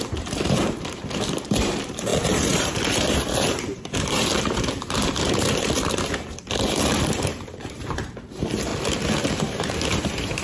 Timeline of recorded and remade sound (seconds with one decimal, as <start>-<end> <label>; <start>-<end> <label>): 0.0-8.7 remade; 8.7-9.2 recorded; 9.2-10.4 remade